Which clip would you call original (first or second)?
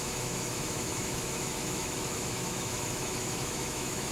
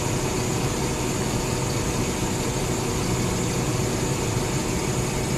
second